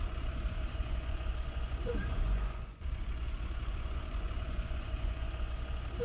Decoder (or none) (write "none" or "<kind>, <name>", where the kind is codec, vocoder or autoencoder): vocoder, Vocos